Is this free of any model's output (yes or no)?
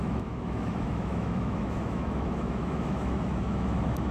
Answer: no